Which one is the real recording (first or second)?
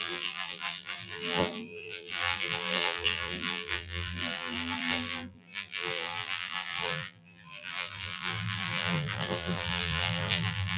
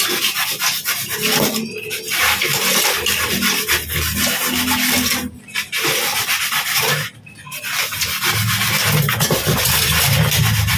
second